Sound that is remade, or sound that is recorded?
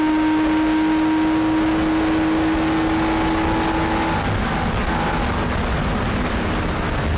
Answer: recorded